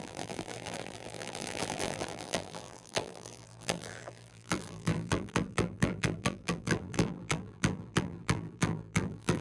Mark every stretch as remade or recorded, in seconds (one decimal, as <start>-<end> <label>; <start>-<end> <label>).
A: 0.0-9.4 remade